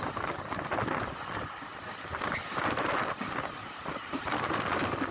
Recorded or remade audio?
remade